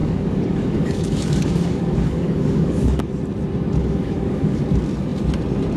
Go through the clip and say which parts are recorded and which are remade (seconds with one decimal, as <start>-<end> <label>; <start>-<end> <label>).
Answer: 0.0-3.1 remade; 3.1-3.8 recorded; 3.8-4.6 remade; 4.6-5.8 recorded